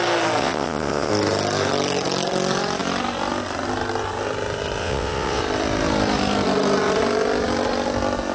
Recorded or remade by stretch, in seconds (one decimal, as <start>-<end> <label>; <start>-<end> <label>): 0.0-0.4 recorded; 0.4-1.1 remade; 1.1-4.8 recorded; 4.8-5.4 remade; 5.4-8.3 recorded